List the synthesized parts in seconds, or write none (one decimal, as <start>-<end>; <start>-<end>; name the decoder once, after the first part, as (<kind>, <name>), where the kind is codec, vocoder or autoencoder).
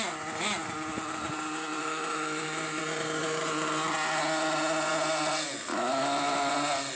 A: 1.8-2.8 (autoencoder, DAC-VAE); 5.7-6.5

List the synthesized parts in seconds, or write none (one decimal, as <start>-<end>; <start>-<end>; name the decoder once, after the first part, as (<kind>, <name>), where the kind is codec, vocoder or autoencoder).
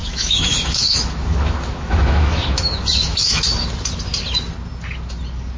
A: 0.0-3.4 (autoencoder, DAC-VAE)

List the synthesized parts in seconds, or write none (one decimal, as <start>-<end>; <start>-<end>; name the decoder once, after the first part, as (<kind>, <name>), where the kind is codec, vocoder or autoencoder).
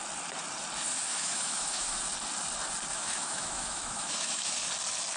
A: 1.1-2.0 (autoencoder, DAC-VAE); 2.9-4.5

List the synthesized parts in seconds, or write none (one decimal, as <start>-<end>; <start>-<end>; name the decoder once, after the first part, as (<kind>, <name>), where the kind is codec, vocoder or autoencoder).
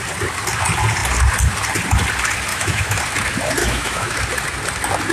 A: 2.5-3.0 (autoencoder, DAC-VAE); 3.6-4.2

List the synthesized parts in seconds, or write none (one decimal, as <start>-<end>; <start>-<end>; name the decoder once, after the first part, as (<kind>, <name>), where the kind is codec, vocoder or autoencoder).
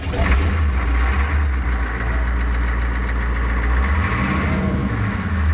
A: 4.8-5.5 (autoencoder, DAC-VAE)